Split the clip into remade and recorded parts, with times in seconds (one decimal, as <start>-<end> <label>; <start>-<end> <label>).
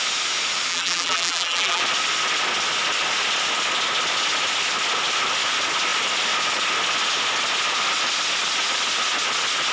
0.0-0.7 recorded; 0.7-1.8 remade; 1.8-9.7 recorded